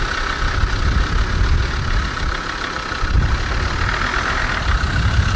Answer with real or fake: real